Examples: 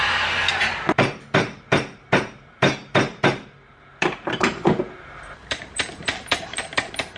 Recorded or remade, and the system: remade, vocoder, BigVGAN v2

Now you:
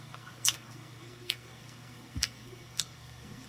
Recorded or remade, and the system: remade, codec, SNAC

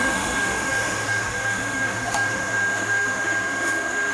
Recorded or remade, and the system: remade, autoencoder, DAC-VAE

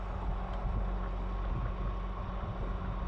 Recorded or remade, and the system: recorded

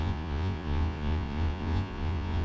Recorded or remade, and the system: remade, vocoder, Vocos